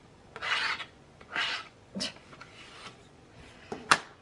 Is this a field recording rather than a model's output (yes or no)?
no